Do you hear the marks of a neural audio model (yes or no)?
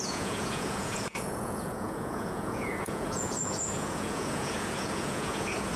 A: yes